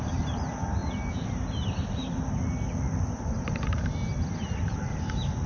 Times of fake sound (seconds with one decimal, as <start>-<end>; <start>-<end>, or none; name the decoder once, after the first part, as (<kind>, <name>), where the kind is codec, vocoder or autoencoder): 0.0-0.8 (vocoder, BigVGAN v2); 3.0-4.1; 4.7-5.5